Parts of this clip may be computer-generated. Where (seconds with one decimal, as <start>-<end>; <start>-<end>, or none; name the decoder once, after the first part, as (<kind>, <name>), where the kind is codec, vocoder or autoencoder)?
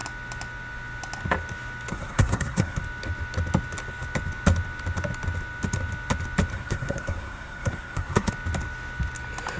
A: 1.9-2.8 (codec, SNAC); 6.5-8.3